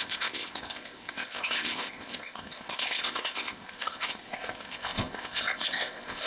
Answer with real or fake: fake